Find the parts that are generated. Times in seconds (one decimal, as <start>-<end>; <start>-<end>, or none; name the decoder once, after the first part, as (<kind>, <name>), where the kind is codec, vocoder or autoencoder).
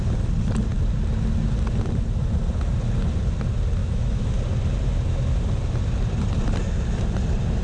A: 3.8-4.3 (autoencoder, DAC-VAE)